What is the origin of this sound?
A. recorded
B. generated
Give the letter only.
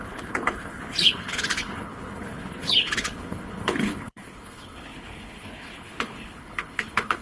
B